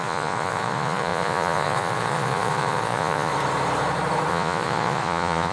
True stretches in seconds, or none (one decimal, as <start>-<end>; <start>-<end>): 3.3-4.3